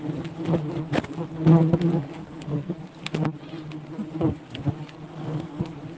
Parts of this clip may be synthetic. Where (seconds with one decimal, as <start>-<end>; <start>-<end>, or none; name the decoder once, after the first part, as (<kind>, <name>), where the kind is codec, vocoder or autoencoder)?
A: 2.2-2.8 (codec, SNAC); 5.1-5.6

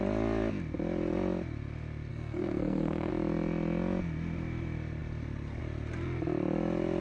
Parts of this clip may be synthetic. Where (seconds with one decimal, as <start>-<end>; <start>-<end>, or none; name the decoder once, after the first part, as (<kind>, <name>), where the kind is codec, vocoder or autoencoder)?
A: 2.1-3.1 (codec, SNAC)

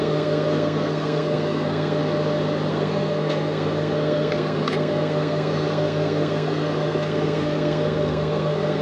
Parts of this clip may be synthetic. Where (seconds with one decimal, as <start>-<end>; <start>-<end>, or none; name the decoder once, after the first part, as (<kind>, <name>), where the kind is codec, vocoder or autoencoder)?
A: 0.0-2.0 (codec, SNAC); 2.7-8.8

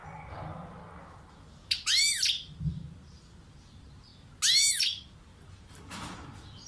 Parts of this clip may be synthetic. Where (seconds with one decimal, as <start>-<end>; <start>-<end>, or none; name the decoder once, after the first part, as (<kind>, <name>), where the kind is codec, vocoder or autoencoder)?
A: none